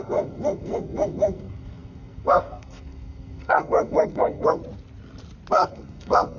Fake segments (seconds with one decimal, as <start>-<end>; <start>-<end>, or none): 0.0-4.6; 5.5-6.4

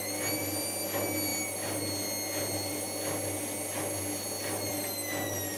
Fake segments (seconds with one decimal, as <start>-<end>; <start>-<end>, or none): none

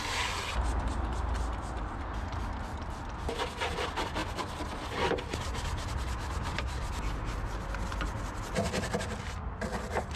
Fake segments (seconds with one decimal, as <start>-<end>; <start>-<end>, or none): none

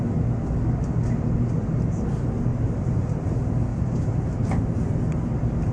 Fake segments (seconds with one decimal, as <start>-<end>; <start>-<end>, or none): 2.5-3.3; 3.7-5.0

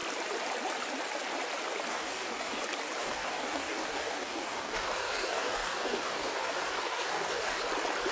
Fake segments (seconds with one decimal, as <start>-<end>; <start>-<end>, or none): 1.9-2.6; 3.0-7.6

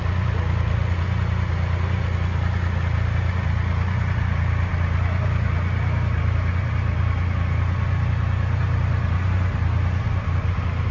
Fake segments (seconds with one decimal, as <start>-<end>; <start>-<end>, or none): none

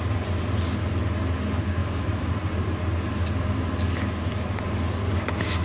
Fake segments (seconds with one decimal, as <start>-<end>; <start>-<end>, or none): 1.8-2.3

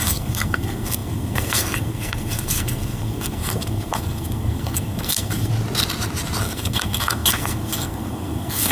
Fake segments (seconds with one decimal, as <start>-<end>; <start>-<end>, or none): 0.0-5.5; 6.4-8.7